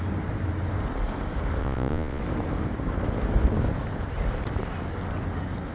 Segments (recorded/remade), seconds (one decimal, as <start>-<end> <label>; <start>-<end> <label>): 0.0-1.6 recorded; 1.6-2.2 remade; 2.2-5.7 recorded